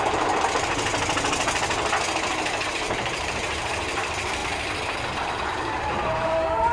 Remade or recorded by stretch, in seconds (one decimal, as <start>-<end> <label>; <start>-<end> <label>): 0.0-0.9 remade; 0.9-2.7 recorded; 2.7-4.4 remade; 4.4-5.9 recorded; 5.9-6.7 remade